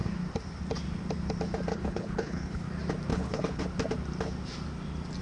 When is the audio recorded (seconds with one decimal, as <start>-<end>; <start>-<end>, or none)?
0.0-1.7; 2.7-3.1; 3.6-5.2

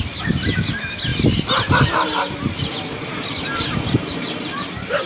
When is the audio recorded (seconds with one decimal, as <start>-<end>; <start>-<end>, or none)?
0.0-5.1

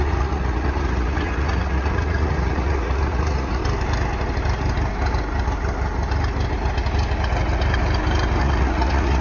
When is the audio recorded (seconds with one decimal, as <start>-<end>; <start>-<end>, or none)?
3.6-8.4

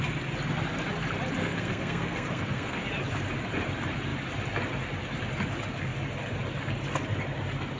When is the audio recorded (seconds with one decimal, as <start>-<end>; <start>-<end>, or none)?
0.0-1.4; 2.8-7.8

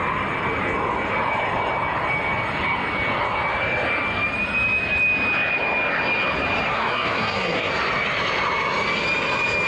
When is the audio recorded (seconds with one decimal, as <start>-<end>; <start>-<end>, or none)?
0.0-6.7; 7.7-9.7

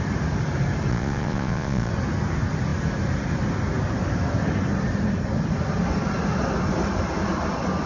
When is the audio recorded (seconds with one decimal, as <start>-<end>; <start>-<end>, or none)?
0.0-0.9; 1.9-7.9

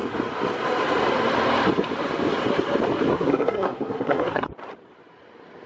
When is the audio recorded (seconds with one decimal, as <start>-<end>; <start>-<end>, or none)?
0.0-3.1; 4.5-5.7

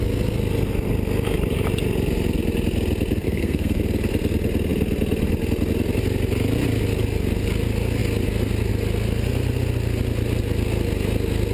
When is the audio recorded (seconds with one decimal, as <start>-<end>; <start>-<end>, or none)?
0.0-3.2; 3.8-11.5